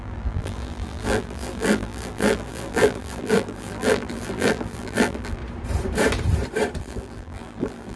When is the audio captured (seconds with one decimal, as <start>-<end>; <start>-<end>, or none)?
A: 5.4-6.8